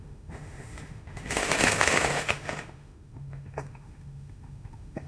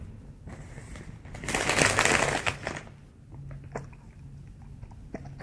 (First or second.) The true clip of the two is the second